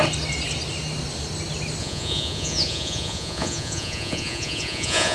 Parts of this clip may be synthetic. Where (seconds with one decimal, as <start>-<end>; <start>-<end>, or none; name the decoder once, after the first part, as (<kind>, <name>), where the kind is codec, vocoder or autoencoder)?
1.8-5.1 (vocoder, Vocos)